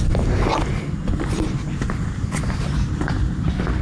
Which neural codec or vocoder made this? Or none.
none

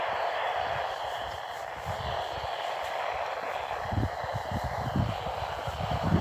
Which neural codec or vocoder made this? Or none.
vocoder, BigVGAN v2